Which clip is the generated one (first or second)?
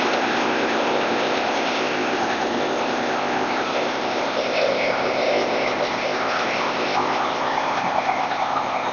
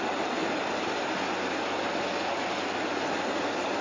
first